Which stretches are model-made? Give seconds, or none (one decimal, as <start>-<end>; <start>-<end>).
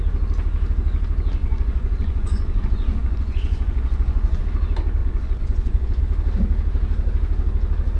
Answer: 1.4-4.4; 5.0-6.0